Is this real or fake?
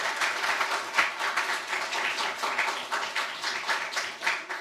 real